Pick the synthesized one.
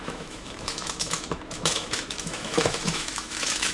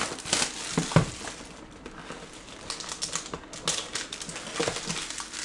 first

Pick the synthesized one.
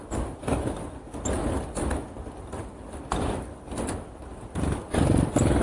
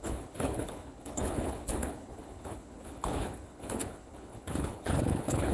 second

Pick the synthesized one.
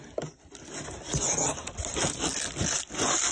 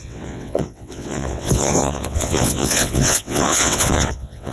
second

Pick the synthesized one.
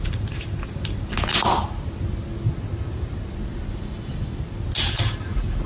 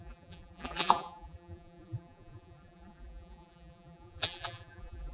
second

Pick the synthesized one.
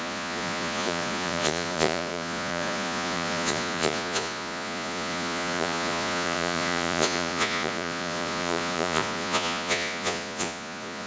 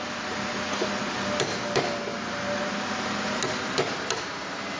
first